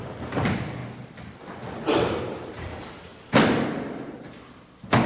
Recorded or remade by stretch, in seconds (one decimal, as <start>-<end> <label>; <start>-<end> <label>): 0.0-0.8 remade; 0.8-2.2 recorded; 2.2-3.1 remade; 3.1-3.7 recorded; 3.7-5.1 remade